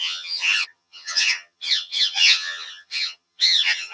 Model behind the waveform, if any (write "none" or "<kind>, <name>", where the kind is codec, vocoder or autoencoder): vocoder, HiFi-GAN